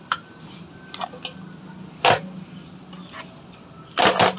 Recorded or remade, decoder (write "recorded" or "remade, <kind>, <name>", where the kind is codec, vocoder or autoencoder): recorded